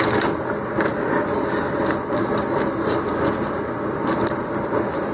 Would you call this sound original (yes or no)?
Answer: yes